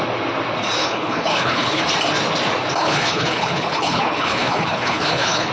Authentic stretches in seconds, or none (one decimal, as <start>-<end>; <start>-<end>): 0.0-0.8; 1.8-2.8